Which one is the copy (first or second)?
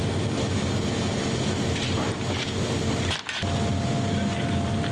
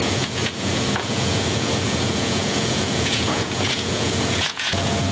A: second